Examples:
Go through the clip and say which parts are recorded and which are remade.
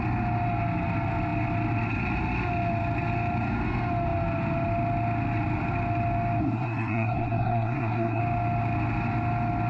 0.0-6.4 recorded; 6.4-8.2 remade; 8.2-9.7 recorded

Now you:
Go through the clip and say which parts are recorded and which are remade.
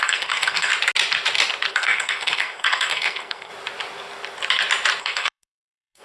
0.0-0.7 remade; 0.7-1.7 recorded; 1.7-3.5 remade; 3.5-5.0 recorded; 5.0-6.0 remade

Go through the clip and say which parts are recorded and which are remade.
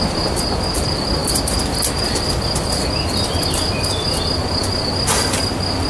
0.0-5.9 recorded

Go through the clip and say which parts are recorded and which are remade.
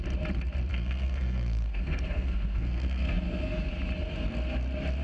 0.0-0.7 recorded; 0.7-3.7 remade; 3.7-5.0 recorded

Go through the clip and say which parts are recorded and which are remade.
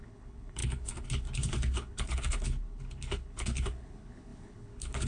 0.0-5.1 remade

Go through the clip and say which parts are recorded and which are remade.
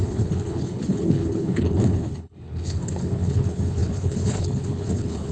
0.0-5.3 remade